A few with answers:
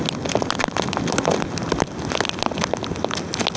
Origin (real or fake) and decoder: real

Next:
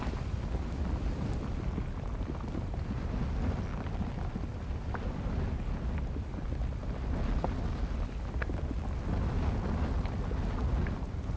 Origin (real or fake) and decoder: real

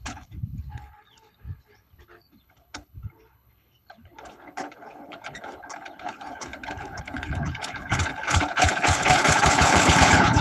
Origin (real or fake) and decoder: fake, codec, HILCodec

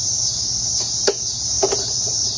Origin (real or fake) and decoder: fake, vocoder, BigVGAN v2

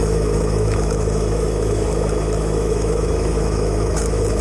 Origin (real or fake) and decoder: fake, autoencoder, DAC-VAE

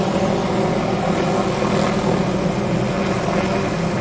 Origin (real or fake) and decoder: real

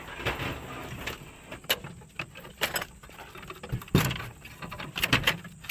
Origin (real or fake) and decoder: real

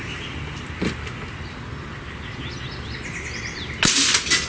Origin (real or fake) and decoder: real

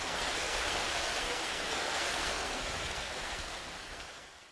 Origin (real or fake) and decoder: fake, codec, SNAC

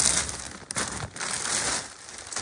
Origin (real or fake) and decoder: real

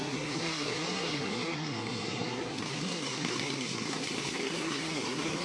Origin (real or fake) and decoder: fake, codec, SNAC